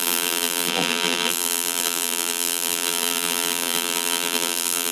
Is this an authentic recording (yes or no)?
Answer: no